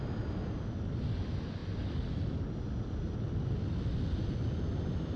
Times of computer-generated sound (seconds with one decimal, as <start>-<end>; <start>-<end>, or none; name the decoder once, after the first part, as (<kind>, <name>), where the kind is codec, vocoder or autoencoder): none